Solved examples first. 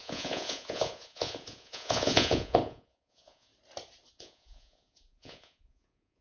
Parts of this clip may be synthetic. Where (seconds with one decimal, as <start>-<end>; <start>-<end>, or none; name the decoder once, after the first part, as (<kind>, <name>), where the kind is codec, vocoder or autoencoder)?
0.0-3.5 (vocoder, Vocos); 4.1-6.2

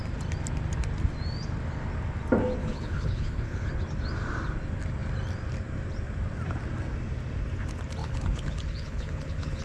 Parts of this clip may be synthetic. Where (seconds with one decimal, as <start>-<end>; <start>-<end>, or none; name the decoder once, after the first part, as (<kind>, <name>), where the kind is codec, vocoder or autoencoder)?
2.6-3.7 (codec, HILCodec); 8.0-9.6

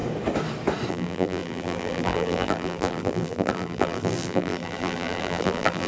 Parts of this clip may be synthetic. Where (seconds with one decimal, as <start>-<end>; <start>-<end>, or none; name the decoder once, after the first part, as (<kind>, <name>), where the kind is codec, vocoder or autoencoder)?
0.9-5.9 (vocoder, BigVGAN v2)

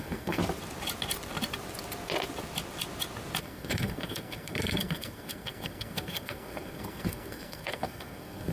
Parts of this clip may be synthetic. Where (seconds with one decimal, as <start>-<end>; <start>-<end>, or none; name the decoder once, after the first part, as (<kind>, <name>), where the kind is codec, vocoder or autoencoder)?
0.0-0.4 (codec, SNAC); 3.4-8.5

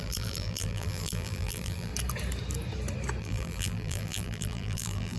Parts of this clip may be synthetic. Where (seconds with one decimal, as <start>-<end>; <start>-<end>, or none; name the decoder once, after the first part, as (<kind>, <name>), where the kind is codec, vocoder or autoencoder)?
0.0-1.9 (vocoder, BigVGAN v2); 3.2-5.2

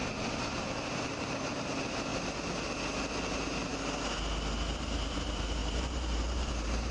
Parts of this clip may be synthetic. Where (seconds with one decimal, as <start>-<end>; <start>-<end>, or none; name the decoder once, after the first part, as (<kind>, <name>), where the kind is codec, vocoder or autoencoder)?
0.0-2.1 (vocoder, BigVGAN v2); 3.1-3.7; 4.7-6.9